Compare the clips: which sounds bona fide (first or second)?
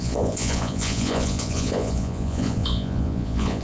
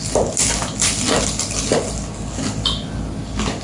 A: second